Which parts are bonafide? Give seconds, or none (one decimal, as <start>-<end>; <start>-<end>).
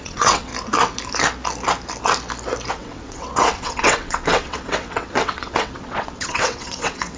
0.5-2.7